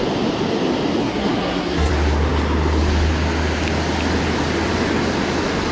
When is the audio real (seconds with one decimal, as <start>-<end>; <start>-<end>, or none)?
0.0-1.0; 1.9-5.7